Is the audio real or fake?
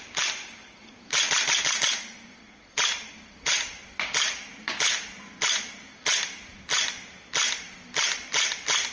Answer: real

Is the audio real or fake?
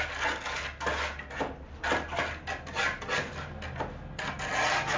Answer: real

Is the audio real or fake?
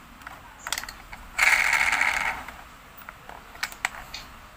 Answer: real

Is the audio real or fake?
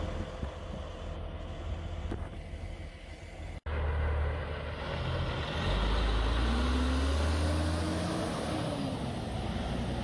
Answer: real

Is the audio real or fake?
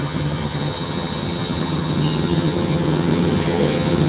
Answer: fake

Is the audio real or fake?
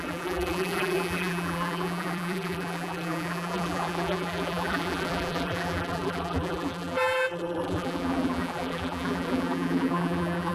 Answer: fake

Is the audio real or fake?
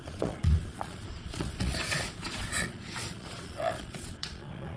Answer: fake